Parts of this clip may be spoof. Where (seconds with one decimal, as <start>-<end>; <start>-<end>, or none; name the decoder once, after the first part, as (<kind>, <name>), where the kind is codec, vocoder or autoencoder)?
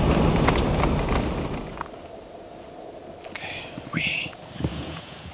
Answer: 4.7-5.3 (vocoder, Vocos)